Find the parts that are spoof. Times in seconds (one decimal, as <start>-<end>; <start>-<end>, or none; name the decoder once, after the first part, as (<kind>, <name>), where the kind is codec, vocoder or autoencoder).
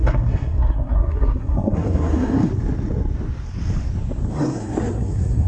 0.0-2.5 (codec, SNAC); 4.3-5.5